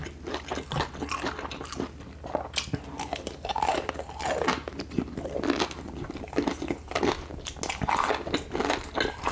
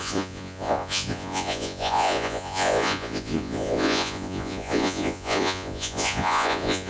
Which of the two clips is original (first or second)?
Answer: first